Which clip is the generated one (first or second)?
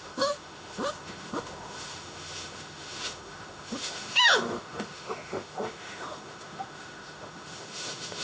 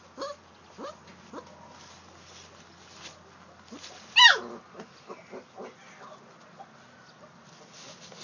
first